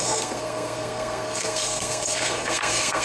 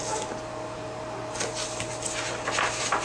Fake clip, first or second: first